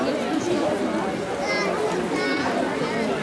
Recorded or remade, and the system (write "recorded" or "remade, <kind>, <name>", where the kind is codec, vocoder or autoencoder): recorded